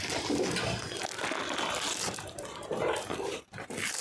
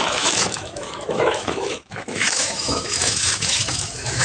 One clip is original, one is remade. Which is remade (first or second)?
second